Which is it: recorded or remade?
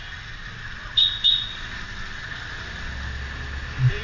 recorded